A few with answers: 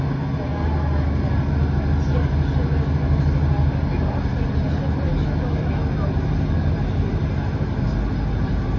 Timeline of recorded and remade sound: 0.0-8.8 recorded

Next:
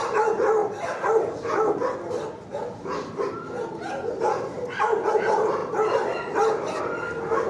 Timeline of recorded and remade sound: 0.0-7.5 recorded

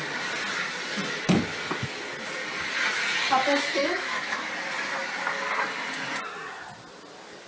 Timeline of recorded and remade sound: 0.0-3.8 recorded; 3.8-4.5 remade; 4.5-7.5 recorded

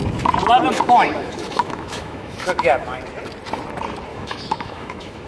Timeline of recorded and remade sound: 0.0-0.7 recorded; 0.7-3.0 remade; 3.0-4.1 recorded; 4.1-5.3 remade